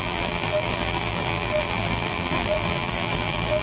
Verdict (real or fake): fake